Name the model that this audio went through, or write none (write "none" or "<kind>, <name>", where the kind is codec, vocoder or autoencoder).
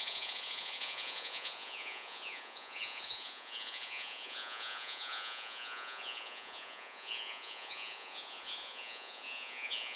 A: vocoder, Vocos